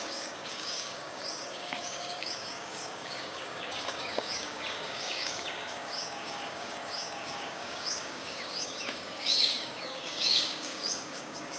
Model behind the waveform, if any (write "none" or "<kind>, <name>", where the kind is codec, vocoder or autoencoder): codec, DAC